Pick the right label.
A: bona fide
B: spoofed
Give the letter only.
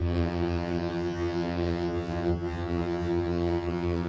B